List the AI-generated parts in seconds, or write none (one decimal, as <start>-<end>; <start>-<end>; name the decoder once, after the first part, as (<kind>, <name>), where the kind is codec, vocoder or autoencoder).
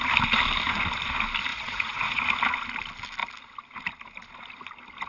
1.5-2.2 (vocoder, Vocos)